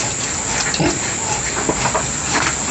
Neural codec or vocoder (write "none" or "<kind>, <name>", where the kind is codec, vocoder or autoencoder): none